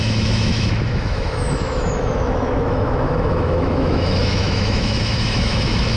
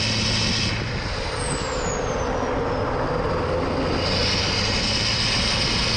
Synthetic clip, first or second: first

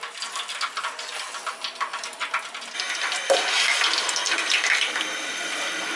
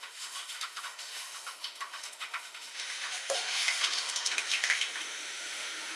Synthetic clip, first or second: second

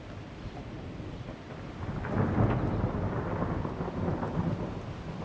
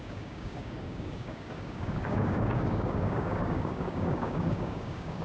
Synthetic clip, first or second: second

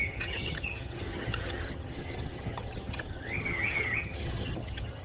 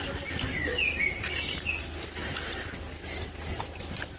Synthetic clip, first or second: first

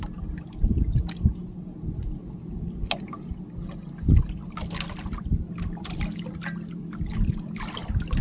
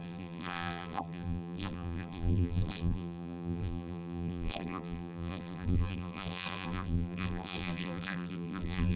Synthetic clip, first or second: second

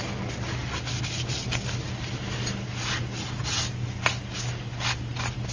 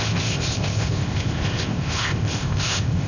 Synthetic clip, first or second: second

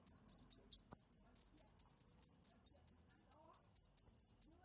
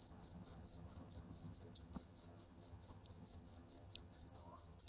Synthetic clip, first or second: second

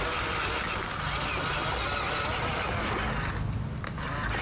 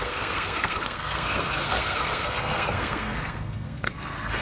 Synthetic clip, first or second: second